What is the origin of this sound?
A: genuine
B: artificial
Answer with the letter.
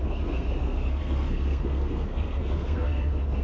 B